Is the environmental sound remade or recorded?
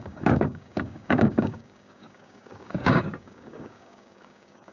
remade